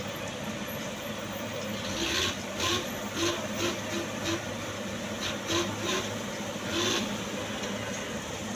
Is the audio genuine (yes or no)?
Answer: yes